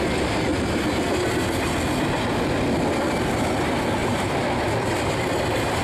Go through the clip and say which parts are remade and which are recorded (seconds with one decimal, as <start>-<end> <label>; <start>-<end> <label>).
0.0-5.8 recorded